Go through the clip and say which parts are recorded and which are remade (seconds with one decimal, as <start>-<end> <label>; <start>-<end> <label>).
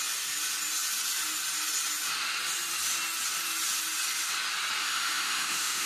0.0-4.8 recorded; 4.8-5.9 remade